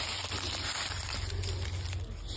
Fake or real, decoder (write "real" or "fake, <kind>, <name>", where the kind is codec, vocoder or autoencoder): real